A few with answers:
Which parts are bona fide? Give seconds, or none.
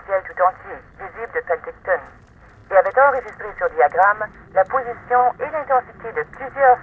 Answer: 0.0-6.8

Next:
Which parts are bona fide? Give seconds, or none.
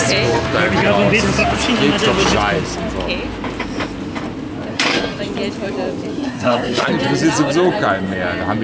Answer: 0.0-4.7; 5.2-6.1; 6.9-8.6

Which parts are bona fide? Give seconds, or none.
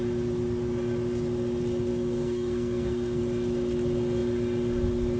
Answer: 0.0-1.9; 3.2-5.2